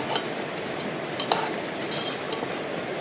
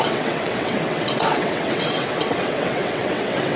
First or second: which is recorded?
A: first